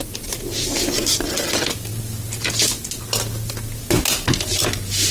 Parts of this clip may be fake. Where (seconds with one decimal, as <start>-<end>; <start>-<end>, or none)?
none